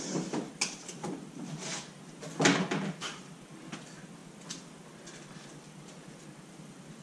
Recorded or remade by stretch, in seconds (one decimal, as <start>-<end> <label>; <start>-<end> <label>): 0.0-7.0 recorded